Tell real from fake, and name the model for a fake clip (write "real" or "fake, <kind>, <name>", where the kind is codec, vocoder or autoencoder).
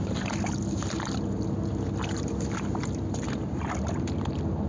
real